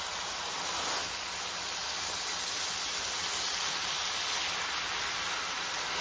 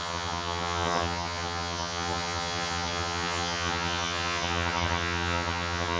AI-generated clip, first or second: second